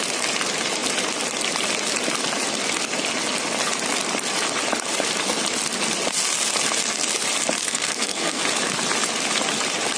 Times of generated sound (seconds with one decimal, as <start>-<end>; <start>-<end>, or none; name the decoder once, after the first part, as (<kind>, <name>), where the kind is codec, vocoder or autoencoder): 7.6-8.4 (codec, SNAC)